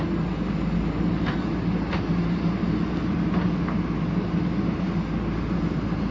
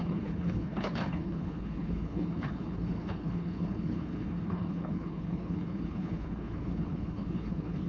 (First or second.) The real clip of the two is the first